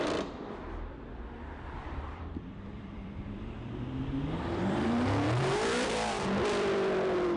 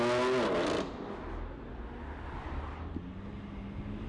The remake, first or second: first